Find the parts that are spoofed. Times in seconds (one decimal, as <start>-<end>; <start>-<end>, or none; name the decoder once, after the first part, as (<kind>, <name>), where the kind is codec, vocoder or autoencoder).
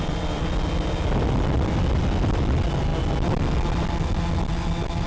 none